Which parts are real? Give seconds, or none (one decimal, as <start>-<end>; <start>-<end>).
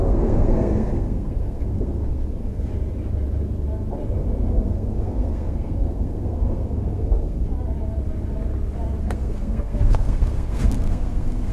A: 2.7-4.5; 7.5-9.0